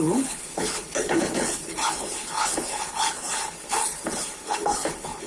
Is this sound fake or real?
fake